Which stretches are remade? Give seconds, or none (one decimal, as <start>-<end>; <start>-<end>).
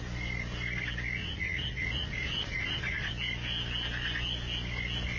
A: 1.2-3.1